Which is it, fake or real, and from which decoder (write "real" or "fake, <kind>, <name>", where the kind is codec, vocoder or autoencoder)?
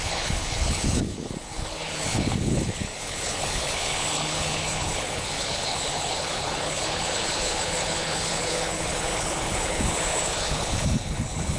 fake, codec, HILCodec